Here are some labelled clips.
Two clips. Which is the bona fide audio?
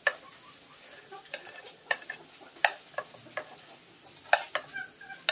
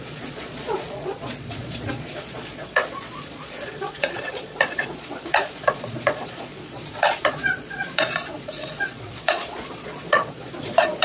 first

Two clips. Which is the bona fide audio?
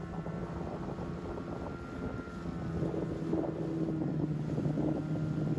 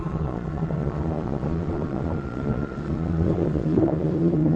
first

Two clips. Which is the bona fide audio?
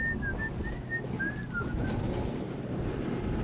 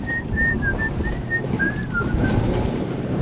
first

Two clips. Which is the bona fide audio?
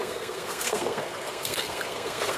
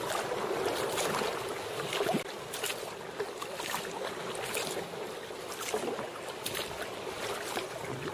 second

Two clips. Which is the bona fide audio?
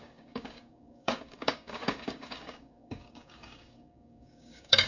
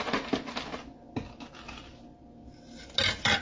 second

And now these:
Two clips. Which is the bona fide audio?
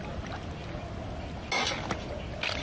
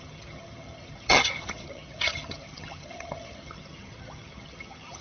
first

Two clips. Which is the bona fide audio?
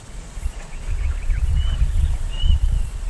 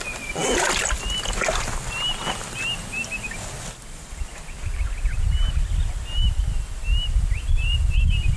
second